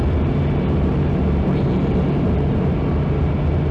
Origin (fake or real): real